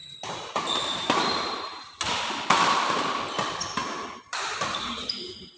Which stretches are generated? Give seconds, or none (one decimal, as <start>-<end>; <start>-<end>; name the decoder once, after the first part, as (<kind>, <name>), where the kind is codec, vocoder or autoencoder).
0.0-2.0 (vocoder, BigVGAN v2); 3.8-5.0